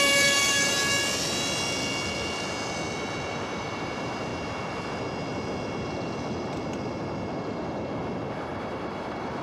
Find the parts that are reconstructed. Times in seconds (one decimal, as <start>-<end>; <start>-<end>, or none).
0.0-0.9; 3.3-4.3; 8.6-9.4